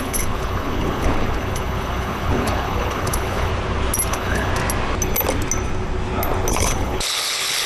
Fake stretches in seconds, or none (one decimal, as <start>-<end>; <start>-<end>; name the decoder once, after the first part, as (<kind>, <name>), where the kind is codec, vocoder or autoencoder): 0.0-3.5 (codec, HILCodec); 4.1-4.5; 6.5-7.7